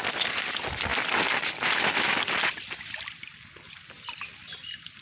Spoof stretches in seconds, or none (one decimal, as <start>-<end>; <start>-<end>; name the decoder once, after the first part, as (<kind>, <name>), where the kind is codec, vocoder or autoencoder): none